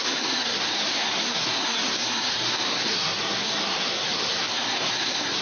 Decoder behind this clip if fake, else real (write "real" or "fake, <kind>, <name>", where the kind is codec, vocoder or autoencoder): fake, codec, SNAC